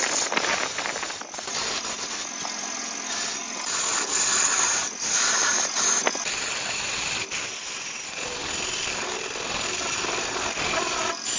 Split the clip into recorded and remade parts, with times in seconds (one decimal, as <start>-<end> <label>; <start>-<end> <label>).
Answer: 0.0-4.3 recorded; 4.3-4.8 remade; 4.8-11.4 recorded